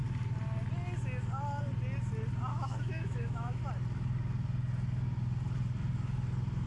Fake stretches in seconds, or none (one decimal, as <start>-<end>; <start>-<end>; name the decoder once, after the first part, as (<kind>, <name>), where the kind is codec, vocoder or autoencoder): 2.5-3.6 (autoencoder, DAC-VAE)